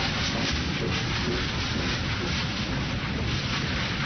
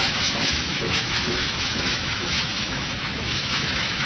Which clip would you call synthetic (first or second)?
second